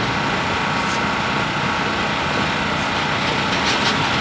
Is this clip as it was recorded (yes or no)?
yes